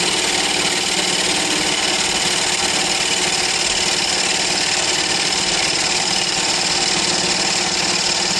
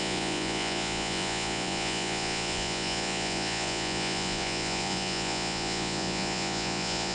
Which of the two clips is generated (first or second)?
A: second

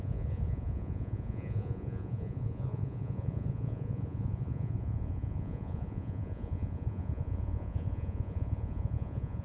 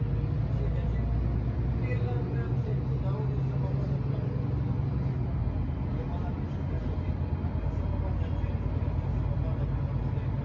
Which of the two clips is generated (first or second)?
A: first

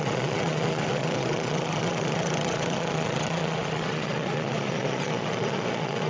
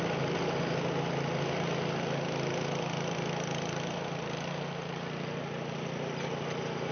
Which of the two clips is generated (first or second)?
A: first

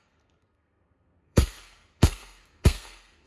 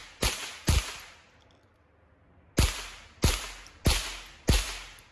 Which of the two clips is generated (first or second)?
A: first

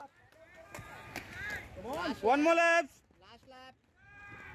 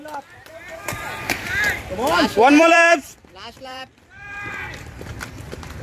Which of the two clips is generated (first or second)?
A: second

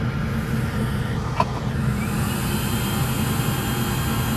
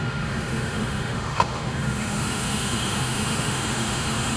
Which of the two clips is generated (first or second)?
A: second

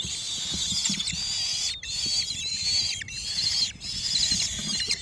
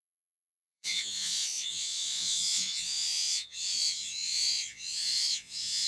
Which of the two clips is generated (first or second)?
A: second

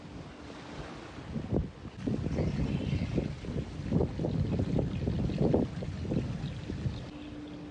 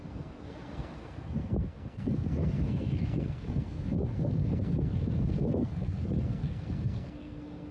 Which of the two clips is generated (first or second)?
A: second